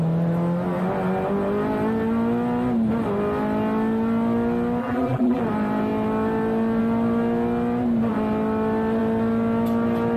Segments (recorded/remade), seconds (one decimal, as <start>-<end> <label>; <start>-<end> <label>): 0.0-4.8 recorded; 4.8-5.4 remade; 5.4-10.2 recorded